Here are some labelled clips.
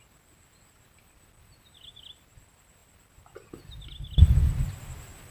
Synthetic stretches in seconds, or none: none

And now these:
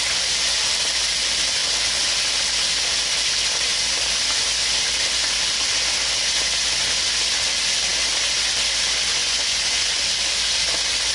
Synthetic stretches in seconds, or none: 9.2-10.0 (vocoder, Vocos)

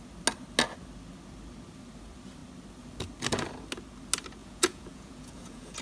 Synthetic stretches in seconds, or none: 4.4-5.8 (vocoder, Vocos)

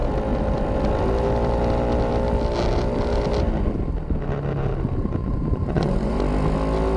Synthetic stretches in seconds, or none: 5.2-6.2 (vocoder, Vocos)

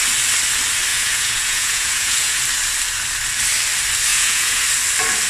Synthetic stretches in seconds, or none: 0.9-2.4 (vocoder, Vocos); 4.1-4.6